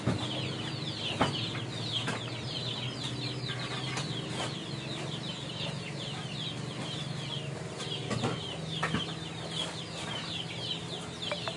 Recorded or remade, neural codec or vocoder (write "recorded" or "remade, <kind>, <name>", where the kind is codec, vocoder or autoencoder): recorded